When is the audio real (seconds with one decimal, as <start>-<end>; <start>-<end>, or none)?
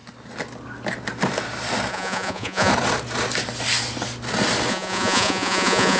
0.0-1.9; 2.7-4.7